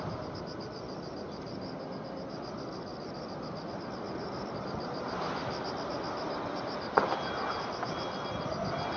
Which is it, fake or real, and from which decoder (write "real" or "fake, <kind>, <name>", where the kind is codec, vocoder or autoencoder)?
real